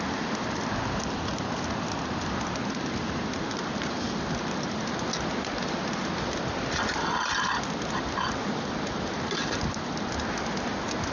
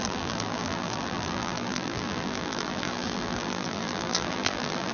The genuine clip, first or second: first